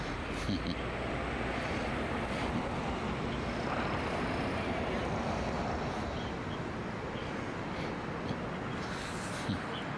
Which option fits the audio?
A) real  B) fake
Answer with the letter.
A